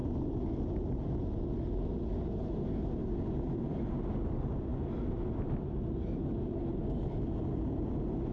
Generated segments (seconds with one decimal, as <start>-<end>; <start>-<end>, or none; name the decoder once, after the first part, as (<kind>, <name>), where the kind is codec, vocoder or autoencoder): none